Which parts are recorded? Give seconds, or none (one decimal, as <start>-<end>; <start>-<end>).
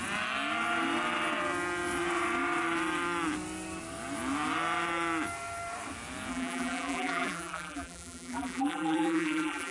0.0-6.3